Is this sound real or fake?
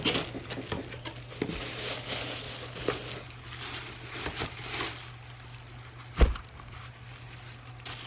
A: real